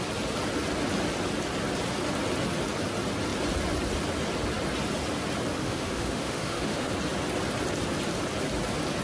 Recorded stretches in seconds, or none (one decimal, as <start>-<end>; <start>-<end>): 0.0-5.6; 6.9-9.0